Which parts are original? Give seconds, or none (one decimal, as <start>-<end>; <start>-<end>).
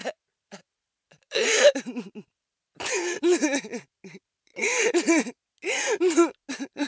4.5-6.5